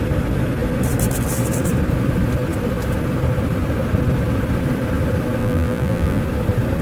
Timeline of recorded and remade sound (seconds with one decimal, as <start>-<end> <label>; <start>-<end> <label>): 0.0-5.4 recorded; 5.4-6.2 remade; 6.2-6.8 recorded